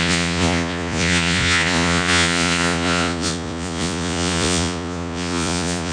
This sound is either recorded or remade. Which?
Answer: remade